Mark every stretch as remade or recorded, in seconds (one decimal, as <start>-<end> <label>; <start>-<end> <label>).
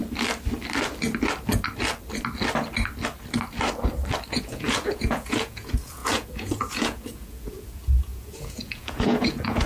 0.0-4.4 recorded; 4.4-9.7 remade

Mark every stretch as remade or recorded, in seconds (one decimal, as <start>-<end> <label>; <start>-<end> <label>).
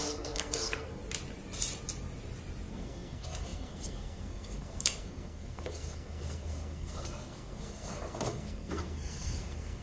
0.0-1.0 remade; 1.0-2.7 recorded; 2.7-9.8 remade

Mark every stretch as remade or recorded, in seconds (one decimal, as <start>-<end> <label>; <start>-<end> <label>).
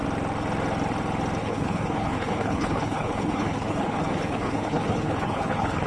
0.0-1.4 recorded; 1.4-5.9 remade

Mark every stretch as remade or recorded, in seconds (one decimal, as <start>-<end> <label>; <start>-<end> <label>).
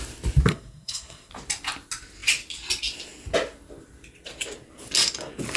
0.0-0.5 recorded; 0.5-1.3 remade; 1.3-5.6 recorded